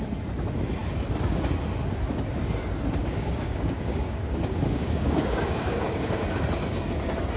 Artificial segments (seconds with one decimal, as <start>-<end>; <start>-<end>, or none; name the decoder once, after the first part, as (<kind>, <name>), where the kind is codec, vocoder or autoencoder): 3.0-6.2 (codec, DAC)